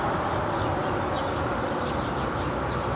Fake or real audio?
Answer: real